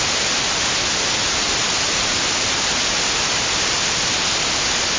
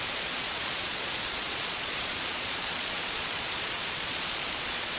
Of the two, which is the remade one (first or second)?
second